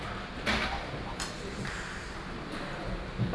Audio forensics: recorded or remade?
recorded